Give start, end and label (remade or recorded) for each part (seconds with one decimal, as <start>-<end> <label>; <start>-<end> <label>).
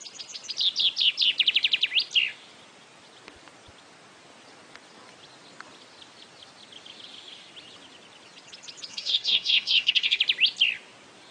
0.0-8.9 recorded; 8.9-10.2 remade; 10.2-11.3 recorded